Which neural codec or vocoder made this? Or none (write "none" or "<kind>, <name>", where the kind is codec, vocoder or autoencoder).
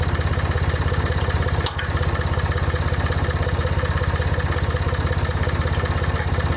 none